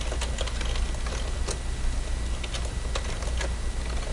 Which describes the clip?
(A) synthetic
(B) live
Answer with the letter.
B